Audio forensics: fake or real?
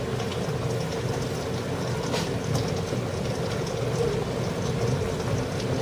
real